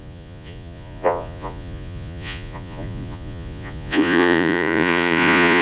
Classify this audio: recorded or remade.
remade